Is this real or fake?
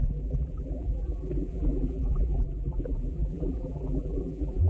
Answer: fake